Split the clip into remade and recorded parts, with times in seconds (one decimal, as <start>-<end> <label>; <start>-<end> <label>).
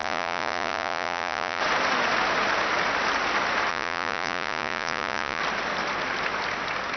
0.0-1.6 remade; 1.6-3.7 recorded; 3.7-5.4 remade; 5.4-7.0 recorded